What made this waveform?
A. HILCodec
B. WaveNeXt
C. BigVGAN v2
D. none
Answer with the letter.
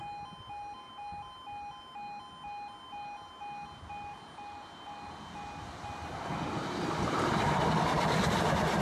D